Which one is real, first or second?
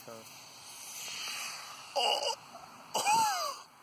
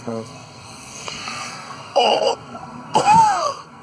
first